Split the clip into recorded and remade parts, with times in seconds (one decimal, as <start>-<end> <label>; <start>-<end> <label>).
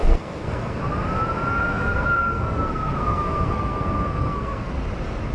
0.0-0.8 remade; 0.8-1.5 recorded; 1.5-4.7 remade; 4.7-5.3 recorded